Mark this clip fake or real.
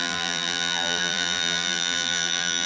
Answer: fake